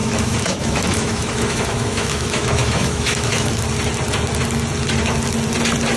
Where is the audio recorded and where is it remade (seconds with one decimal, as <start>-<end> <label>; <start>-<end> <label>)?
0.0-3.6 remade; 3.6-6.0 recorded